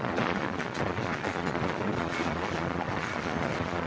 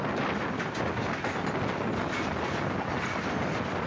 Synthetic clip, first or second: first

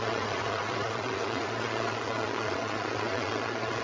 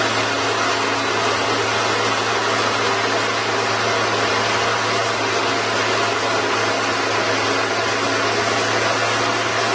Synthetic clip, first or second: first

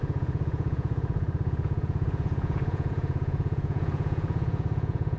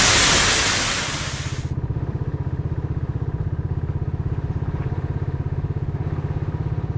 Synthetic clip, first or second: first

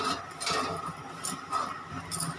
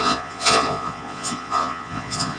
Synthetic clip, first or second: second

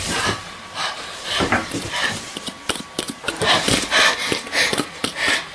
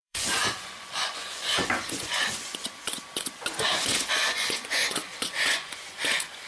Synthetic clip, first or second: second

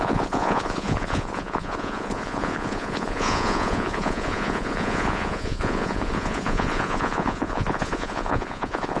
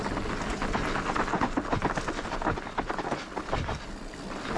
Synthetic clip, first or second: first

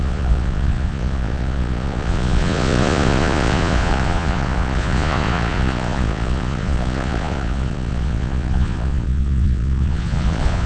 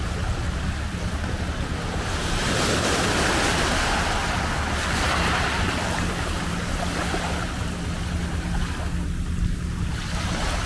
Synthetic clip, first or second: first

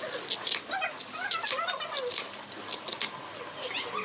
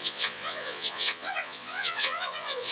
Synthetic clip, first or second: second